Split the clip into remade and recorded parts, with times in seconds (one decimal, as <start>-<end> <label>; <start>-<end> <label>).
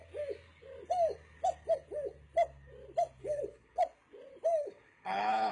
0.0-3.2 recorded; 3.2-3.8 remade; 3.8-4.6 recorded; 4.6-5.5 remade